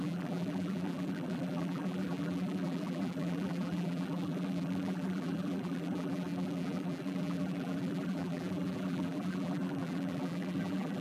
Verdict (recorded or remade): remade